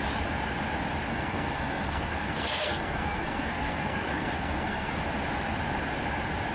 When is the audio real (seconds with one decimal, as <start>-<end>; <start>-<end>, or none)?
0.0-1.1; 5.0-6.5